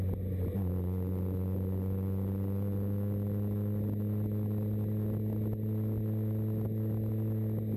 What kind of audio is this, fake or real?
real